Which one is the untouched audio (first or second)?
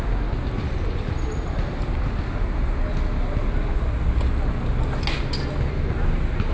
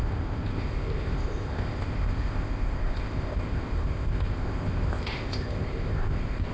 first